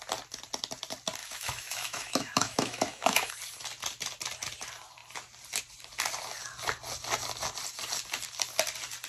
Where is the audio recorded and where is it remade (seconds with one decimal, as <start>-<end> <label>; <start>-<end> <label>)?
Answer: 0.0-1.2 recorded; 1.2-3.3 remade; 3.3-9.1 recorded